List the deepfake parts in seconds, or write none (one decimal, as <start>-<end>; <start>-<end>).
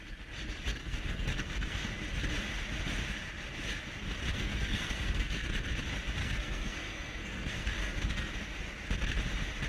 0.8-2.0; 4.3-5.7; 6.2-8.3